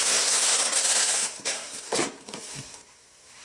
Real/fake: fake